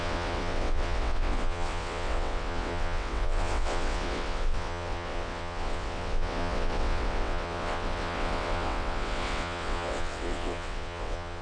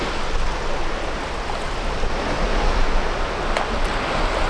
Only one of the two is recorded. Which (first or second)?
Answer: second